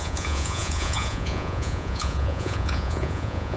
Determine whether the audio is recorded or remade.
remade